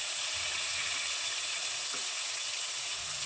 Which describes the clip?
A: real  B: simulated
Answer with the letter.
B